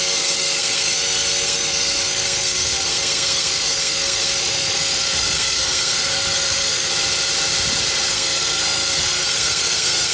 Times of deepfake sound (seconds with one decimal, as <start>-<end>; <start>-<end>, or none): 0.0-6.9; 8.1-10.1